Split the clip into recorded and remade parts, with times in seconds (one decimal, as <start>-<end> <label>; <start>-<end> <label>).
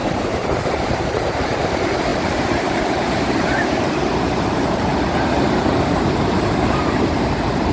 0.0-7.7 remade